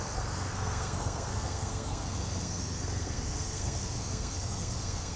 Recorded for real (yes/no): no